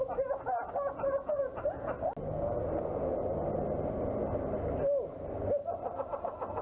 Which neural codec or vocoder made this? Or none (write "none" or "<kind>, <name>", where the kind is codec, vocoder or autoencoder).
none